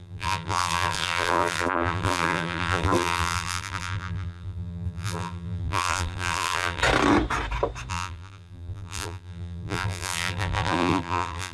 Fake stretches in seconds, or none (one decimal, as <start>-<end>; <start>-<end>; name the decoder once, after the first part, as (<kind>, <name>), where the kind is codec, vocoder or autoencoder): 0.0-6.8 (vocoder, BigVGAN v2); 7.9-11.5